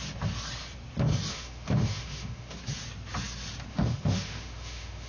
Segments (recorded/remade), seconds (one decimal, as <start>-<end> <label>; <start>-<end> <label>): 0.0-1.3 recorded; 1.3-2.6 remade; 2.6-3.7 recorded; 3.7-5.1 remade